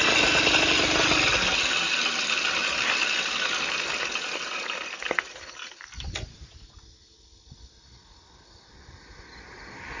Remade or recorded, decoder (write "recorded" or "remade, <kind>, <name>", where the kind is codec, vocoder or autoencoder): recorded